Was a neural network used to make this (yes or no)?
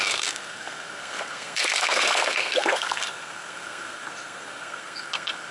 yes